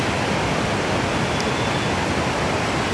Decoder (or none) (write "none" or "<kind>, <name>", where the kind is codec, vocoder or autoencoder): none